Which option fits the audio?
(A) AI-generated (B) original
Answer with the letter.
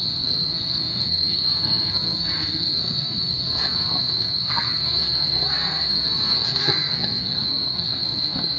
A